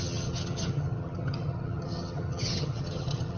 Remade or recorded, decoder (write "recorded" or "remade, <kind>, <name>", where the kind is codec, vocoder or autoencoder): remade, vocoder, HiFi-GAN